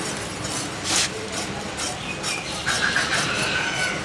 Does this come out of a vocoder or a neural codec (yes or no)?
no